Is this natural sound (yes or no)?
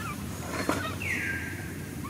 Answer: no